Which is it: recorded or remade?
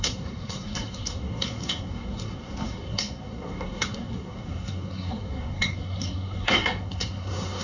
remade